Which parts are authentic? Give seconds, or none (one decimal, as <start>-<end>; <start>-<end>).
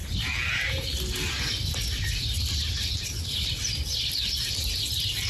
0.0-5.3